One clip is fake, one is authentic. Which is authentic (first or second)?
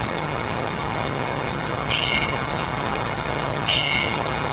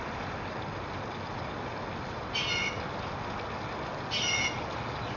second